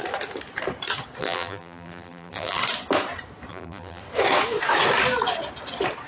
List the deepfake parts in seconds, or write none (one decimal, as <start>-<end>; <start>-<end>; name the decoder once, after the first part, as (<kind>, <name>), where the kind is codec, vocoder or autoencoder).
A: 1.2-2.6 (vocoder, BigVGAN v2); 3.5-4.0